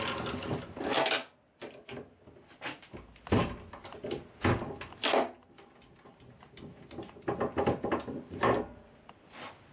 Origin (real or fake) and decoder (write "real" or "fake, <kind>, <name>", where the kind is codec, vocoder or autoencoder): real